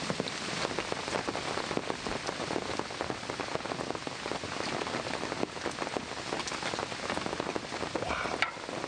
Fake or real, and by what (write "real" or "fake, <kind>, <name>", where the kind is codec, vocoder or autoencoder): real